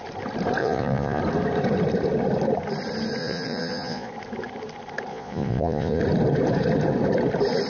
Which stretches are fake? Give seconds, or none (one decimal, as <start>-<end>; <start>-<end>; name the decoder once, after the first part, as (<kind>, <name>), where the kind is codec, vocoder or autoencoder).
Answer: 0.6-1.2 (vocoder, Vocos); 3.2-4.1; 5.1-6.0